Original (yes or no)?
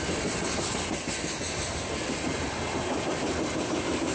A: no